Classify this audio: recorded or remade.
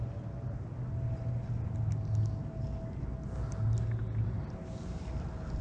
recorded